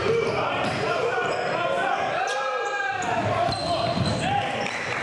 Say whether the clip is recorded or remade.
recorded